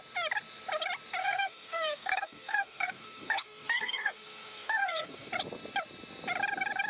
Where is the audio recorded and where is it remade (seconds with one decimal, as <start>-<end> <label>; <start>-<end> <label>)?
0.0-1.2 recorded; 1.2-5.3 remade; 5.3-6.9 recorded